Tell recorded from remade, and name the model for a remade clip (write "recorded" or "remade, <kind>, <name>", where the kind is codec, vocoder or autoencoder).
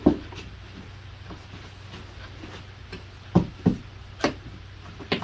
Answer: recorded